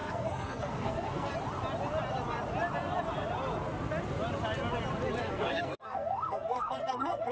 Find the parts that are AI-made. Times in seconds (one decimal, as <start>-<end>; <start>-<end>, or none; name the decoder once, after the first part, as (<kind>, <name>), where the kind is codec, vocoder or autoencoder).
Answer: 0.0-1.3 (codec, SNAC); 5.2-7.3